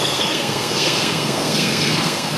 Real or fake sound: fake